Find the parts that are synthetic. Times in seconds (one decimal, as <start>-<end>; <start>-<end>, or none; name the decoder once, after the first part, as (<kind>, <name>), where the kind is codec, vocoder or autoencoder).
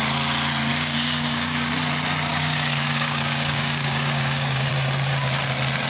0.7-1.7 (codec, DAC); 2.3-4.7